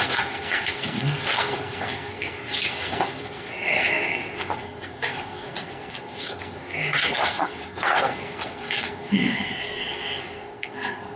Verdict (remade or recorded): remade